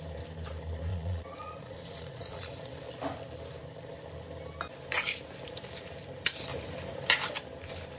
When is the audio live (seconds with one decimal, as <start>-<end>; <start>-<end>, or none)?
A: 0.0-0.9; 2.5-8.0